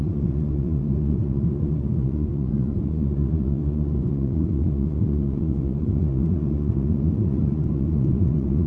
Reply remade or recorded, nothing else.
remade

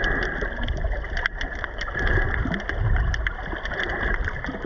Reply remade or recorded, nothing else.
recorded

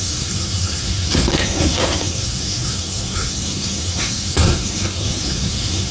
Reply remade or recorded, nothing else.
remade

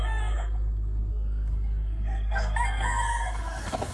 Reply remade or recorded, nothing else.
remade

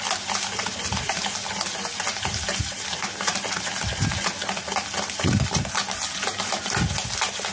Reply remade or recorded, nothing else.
recorded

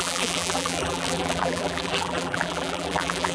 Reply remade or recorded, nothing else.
remade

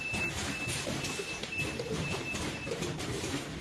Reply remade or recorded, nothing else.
remade